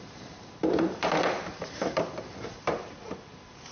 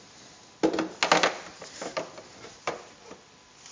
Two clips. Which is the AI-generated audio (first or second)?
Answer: first